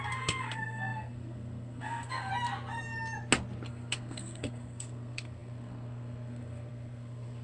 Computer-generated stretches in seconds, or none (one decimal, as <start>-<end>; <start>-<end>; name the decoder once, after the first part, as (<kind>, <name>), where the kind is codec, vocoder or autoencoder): 0.0-2.3 (codec, SNAC); 3.7-7.4